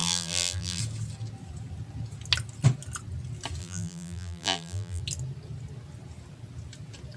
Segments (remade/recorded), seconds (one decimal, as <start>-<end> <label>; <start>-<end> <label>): 0.0-0.8 remade; 0.8-3.6 recorded; 3.6-5.0 remade; 5.0-7.2 recorded